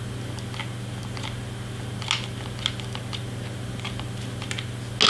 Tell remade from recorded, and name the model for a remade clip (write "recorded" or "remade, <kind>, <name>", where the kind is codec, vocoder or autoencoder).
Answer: recorded